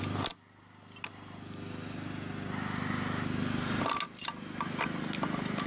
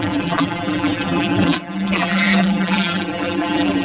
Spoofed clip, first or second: second